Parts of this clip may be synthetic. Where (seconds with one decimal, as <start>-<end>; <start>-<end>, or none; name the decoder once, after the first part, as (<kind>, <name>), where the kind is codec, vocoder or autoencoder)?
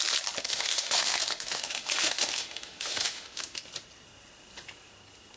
0.4-3.6 (autoencoder, DAC-VAE)